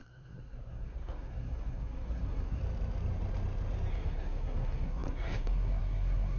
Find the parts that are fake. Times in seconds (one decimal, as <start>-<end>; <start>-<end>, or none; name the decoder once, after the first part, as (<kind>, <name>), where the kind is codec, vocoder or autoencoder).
0.0-2.6 (codec, SNAC); 3.9-6.4